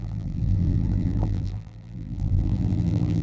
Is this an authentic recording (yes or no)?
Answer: no